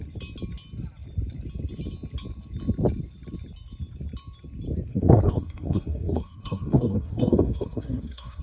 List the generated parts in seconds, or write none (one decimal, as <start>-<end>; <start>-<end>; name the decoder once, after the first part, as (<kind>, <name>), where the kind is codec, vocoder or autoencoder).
4.9-8.4 (codec, SNAC)